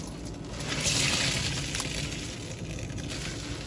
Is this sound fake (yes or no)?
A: no